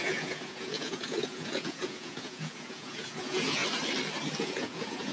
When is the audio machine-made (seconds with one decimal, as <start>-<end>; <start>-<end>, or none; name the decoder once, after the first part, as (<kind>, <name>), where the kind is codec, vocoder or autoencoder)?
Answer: 0.0-3.6 (vocoder, Vocos); 4.4-5.1